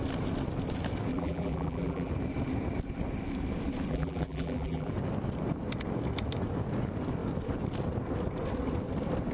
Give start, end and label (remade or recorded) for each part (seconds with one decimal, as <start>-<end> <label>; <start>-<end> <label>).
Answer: 0.0-1.1 recorded; 1.1-2.1 remade; 2.1-3.9 recorded; 3.9-4.9 remade; 4.9-9.3 recorded